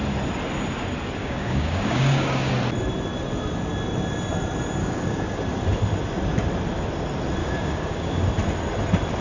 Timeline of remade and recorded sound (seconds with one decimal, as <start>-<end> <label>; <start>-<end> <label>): 0.0-1.2 recorded; 1.2-2.5 remade; 2.5-4.8 recorded; 4.8-5.4 remade; 5.4-7.4 recorded; 7.4-8.2 remade; 8.2-9.2 recorded